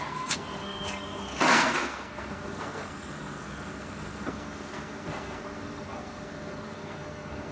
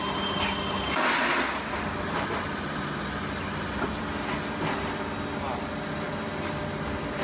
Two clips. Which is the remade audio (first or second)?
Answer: first